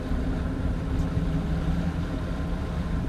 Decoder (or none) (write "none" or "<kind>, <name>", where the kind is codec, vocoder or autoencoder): none